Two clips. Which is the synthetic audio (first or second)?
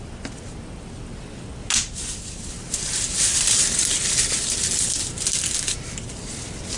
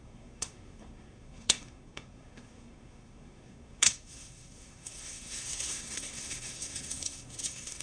second